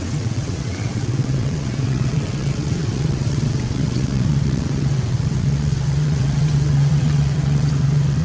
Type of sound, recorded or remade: remade